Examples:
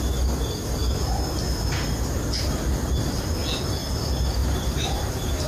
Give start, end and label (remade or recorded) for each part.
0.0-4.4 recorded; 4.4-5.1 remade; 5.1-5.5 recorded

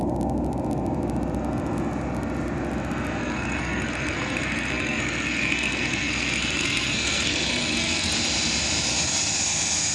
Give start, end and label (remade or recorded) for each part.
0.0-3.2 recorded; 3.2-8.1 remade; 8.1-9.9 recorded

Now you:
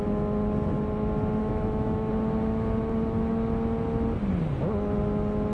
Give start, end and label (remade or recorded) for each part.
0.0-1.4 recorded; 1.4-2.1 remade; 2.1-5.5 recorded